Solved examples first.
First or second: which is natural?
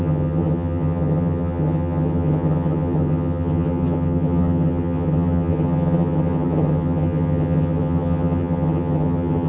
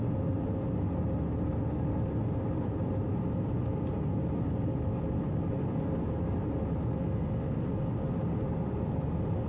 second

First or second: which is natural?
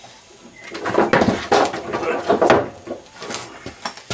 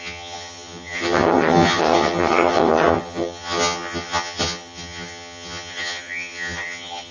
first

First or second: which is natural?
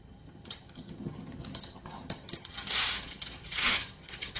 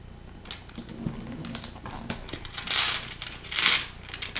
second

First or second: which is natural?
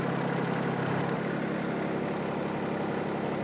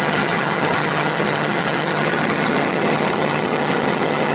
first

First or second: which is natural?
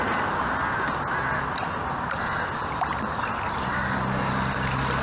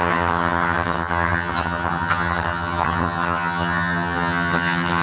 first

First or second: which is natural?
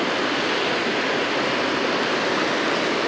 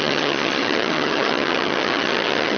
first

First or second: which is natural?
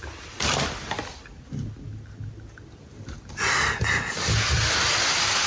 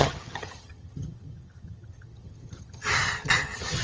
first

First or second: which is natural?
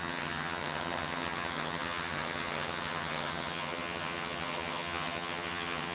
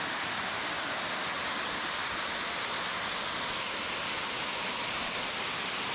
second